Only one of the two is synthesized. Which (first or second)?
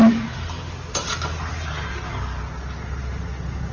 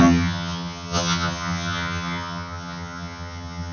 second